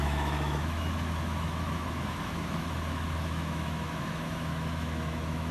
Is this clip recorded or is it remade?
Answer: remade